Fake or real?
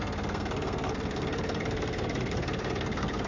fake